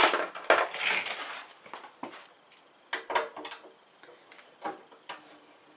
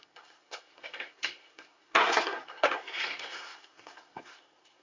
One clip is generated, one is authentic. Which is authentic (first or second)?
first